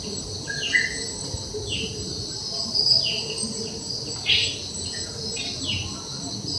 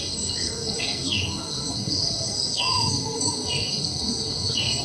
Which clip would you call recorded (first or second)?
first